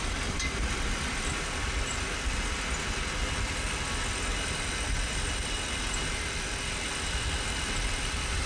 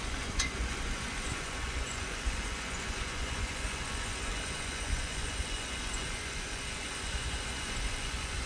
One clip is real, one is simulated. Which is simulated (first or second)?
second